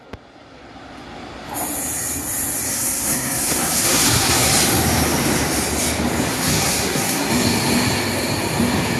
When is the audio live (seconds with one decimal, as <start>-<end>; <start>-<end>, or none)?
0.0-2.7; 4.5-6.3; 7.3-9.0